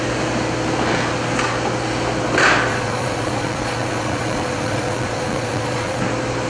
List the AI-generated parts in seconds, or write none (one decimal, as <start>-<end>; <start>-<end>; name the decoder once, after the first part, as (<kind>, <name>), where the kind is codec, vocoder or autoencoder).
2.7-6.0 (vocoder, Vocos)